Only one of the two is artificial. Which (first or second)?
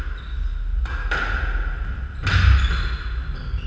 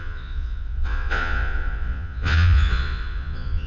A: second